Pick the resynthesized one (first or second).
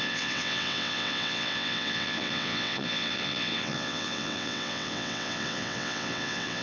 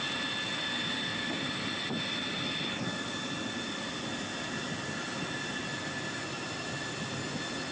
first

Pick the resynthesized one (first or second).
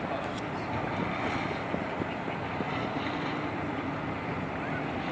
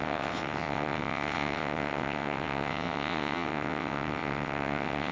second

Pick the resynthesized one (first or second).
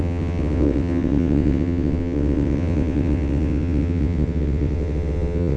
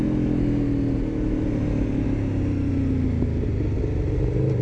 first